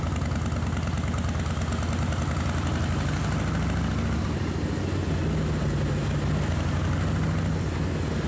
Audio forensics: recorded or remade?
recorded